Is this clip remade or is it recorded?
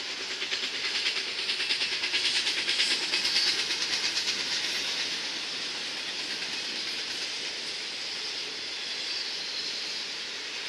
recorded